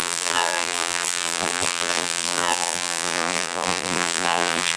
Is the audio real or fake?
fake